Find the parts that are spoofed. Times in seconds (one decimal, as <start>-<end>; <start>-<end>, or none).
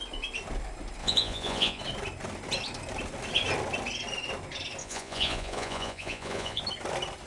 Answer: 1.0-1.8; 4.8-6.6